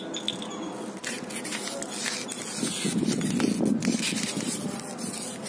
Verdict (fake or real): real